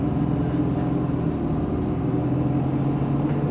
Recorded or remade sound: recorded